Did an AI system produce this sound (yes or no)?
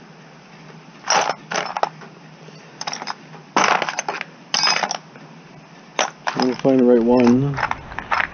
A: no